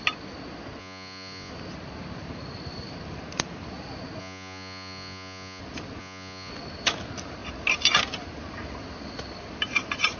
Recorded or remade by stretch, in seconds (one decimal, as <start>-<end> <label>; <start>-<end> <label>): 0.0-0.8 recorded; 0.8-1.5 remade; 1.5-4.2 recorded; 4.2-5.6 remade; 5.6-6.0 recorded; 6.0-6.5 remade; 6.5-10.2 recorded